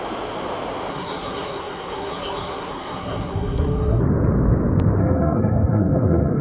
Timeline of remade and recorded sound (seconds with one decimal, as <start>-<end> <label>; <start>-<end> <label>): 0.0-0.9 recorded; 0.9-4.0 remade; 4.0-5.0 recorded; 5.0-6.4 remade